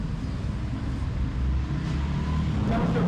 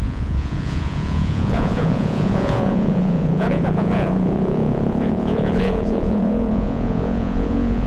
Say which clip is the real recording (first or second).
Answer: first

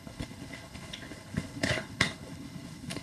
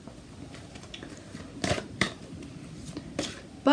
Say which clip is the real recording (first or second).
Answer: second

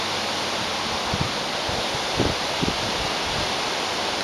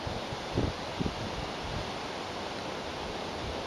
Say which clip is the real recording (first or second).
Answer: first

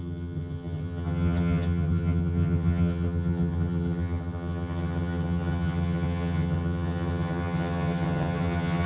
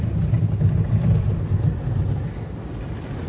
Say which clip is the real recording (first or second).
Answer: second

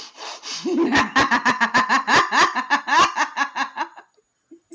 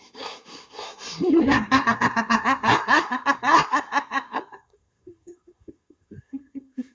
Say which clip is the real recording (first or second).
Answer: first